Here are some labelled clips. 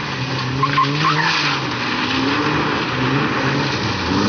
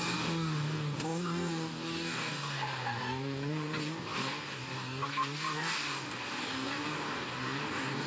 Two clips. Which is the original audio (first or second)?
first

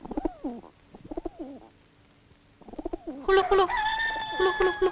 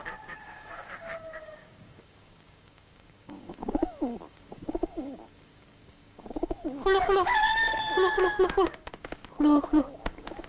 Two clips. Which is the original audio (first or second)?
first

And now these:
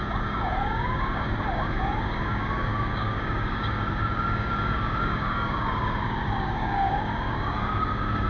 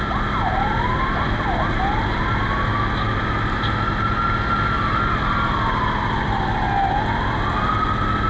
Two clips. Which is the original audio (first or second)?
second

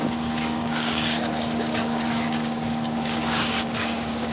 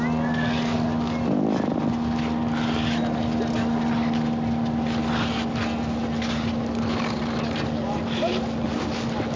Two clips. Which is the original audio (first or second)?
second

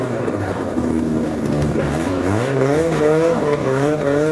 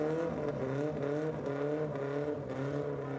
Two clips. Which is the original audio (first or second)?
second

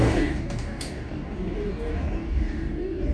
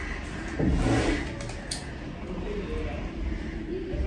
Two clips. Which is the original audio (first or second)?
second